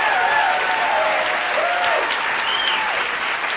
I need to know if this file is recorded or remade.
recorded